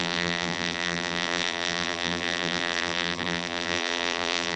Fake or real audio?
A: fake